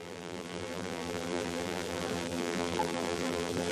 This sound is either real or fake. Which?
fake